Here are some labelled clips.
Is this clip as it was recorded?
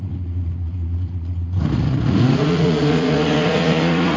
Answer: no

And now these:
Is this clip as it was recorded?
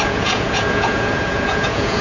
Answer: no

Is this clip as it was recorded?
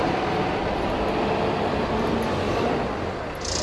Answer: yes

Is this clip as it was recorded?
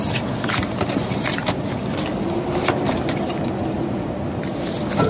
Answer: yes